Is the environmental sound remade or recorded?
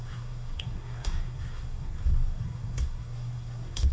remade